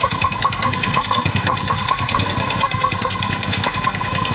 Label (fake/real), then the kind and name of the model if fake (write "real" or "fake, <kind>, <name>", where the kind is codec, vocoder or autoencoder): fake, codec, SNAC